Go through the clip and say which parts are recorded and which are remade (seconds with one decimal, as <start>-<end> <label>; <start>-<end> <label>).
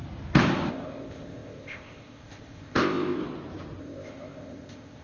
0.0-0.7 recorded; 0.7-3.2 remade; 3.2-3.8 recorded; 3.8-5.0 remade